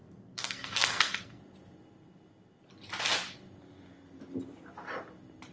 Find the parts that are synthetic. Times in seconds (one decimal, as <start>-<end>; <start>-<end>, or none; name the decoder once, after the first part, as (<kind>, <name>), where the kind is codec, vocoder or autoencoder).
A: 0.0-1.4 (codec, SNAC)